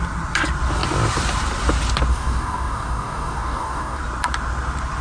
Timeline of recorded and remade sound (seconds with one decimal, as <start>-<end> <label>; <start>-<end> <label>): 0.0-2.1 recorded; 2.1-4.0 remade; 4.0-5.0 recorded